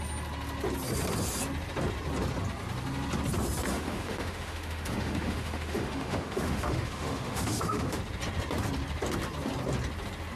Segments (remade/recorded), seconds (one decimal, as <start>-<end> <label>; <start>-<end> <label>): 0.0-3.7 recorded; 3.7-8.0 remade; 8.0-10.4 recorded